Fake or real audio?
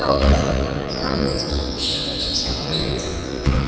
fake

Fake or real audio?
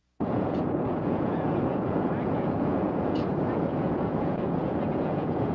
fake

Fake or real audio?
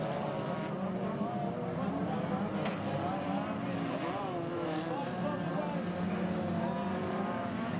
real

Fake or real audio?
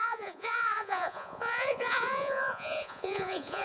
fake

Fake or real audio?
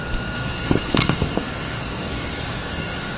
fake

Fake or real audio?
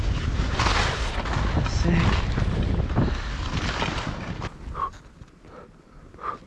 real